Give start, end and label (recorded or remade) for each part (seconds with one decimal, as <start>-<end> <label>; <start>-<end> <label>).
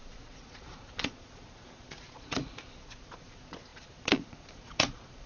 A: 0.0-5.3 remade